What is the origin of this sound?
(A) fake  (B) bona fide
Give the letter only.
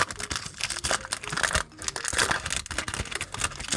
B